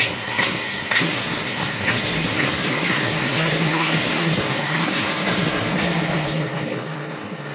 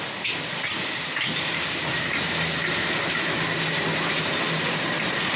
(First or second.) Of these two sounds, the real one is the second